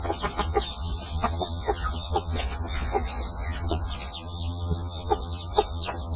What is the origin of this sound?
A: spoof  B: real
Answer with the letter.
A